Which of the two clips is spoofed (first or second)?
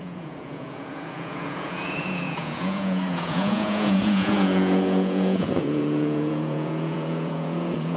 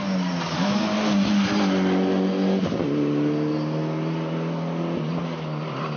first